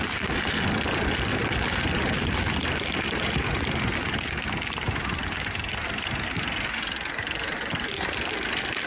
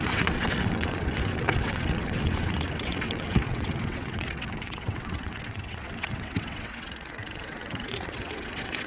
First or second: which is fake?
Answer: second